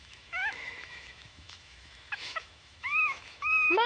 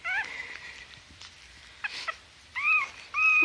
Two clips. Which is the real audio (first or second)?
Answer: second